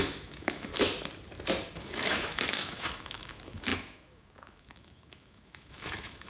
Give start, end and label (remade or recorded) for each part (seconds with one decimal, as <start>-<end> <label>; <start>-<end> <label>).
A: 0.0-0.7 remade; 0.7-1.8 recorded; 1.8-6.3 remade